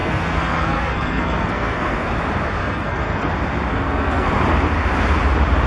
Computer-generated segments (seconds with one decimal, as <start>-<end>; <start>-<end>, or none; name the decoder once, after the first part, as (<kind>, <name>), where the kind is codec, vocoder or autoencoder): 0.0-2.1 (codec, SNAC); 2.6-3.3; 3.7-4.3